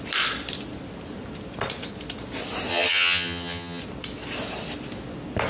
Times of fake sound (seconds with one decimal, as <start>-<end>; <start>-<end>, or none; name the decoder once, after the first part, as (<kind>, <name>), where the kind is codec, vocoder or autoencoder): 2.7-3.8 (vocoder, HiFi-GAN)